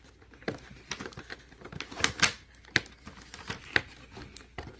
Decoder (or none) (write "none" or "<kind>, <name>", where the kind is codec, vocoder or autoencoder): none